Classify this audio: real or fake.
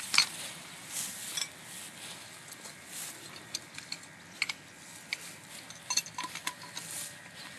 real